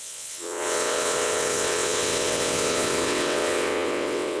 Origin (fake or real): fake